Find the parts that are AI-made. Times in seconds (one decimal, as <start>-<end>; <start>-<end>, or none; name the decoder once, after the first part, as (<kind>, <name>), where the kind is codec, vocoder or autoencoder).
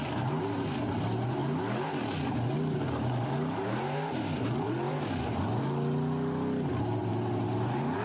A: 0.0-0.7 (vocoder, BigVGAN v2); 1.4-5.6; 7.0-8.0